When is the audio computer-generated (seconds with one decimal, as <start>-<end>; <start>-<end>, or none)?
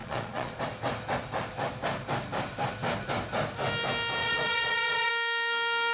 0.0-0.6; 4.2-5.1